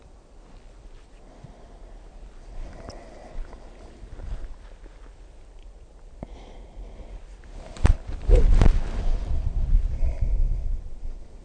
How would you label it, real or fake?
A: fake